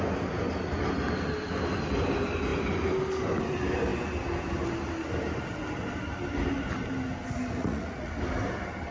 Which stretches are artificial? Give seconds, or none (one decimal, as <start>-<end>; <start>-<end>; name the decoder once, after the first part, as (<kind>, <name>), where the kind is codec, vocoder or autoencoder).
7.6-8.1 (vocoder, Vocos)